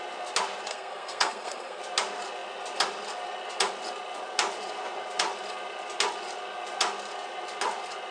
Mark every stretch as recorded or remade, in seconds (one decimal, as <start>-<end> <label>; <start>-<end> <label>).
0.0-0.7 recorded; 0.7-1.8 remade; 1.8-8.1 recorded